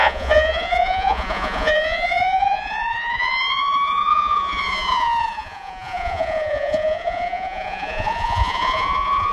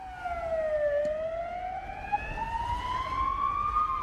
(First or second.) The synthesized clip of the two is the first